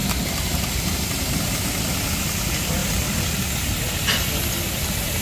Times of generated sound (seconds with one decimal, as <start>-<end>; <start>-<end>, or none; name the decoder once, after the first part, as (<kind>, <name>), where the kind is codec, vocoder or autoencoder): none